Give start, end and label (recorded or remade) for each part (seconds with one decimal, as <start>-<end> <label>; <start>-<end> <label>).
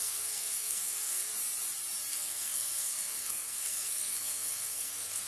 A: 0.0-1.3 remade; 1.3-2.1 recorded; 2.1-5.3 remade